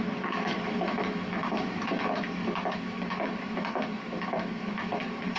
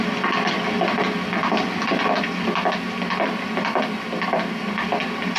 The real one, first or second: second